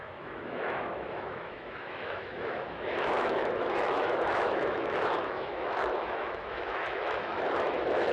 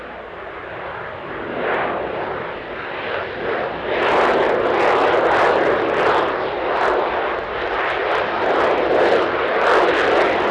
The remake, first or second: first